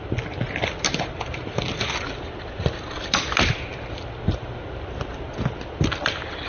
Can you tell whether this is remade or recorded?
recorded